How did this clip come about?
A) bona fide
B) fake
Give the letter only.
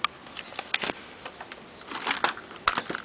B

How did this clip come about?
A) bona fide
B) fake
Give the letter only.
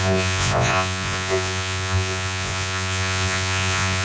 B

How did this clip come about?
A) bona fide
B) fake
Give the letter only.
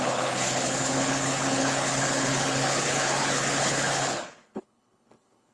B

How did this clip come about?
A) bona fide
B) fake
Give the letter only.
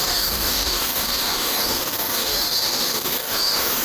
B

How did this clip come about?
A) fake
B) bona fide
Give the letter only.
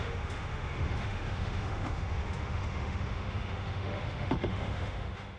A